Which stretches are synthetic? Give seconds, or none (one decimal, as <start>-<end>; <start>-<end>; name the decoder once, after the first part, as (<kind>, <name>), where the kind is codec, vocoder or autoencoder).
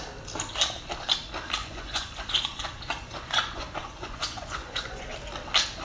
1.6-5.1 (vocoder, Vocos)